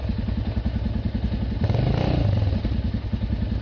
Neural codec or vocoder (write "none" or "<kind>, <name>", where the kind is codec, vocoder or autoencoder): none